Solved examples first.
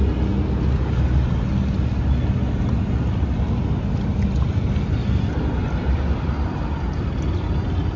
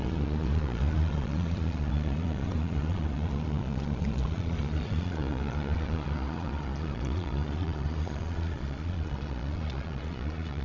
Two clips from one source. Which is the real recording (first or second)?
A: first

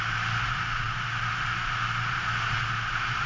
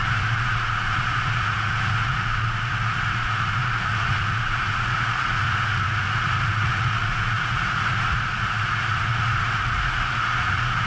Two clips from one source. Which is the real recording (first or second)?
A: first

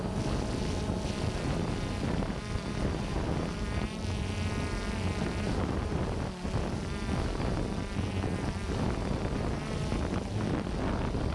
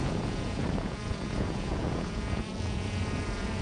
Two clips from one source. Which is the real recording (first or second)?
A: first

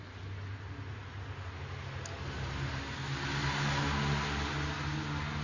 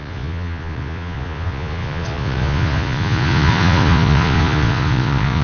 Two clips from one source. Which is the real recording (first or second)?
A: first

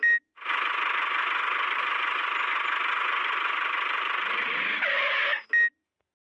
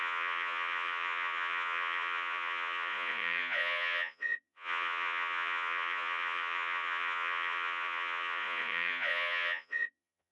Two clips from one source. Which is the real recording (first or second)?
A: first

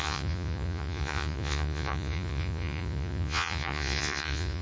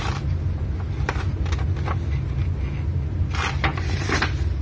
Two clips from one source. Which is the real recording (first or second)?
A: second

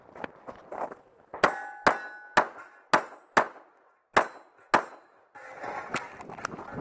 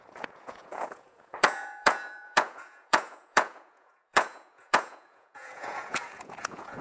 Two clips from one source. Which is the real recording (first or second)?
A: first